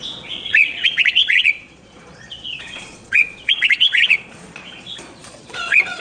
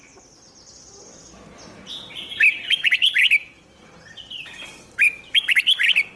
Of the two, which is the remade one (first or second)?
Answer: first